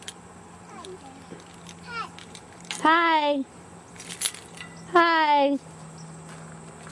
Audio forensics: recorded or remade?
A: recorded